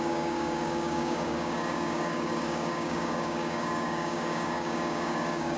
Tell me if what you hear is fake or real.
fake